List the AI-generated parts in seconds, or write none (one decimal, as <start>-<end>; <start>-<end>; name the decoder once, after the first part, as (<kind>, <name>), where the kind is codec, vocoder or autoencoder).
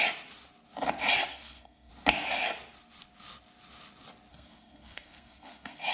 1.3-1.9 (codec, SNAC); 4.3-5.9